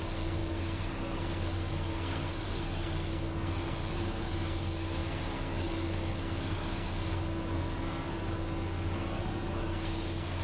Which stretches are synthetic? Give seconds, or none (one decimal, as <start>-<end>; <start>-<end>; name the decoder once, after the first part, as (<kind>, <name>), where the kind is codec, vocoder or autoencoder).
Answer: 0.0-10.4 (codec, SNAC)